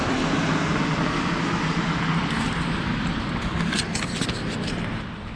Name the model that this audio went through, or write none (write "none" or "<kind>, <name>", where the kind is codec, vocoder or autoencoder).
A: none